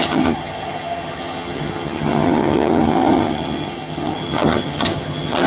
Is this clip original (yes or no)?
no